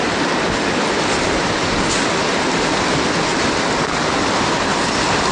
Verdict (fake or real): real